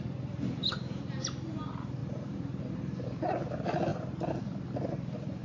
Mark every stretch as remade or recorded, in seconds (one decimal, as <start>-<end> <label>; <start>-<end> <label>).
0.0-5.4 recorded